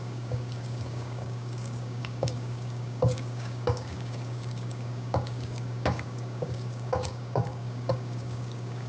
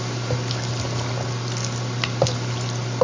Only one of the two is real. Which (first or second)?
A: second